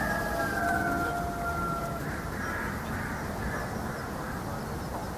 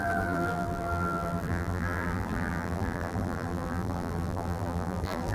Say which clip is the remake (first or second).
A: second